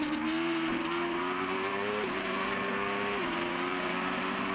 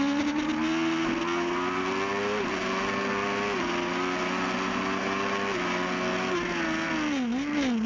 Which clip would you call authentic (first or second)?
second